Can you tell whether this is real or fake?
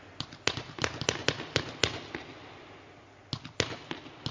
real